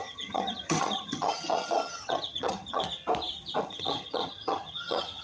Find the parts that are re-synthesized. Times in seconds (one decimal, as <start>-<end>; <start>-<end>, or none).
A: 0.0-2.8; 3.6-5.2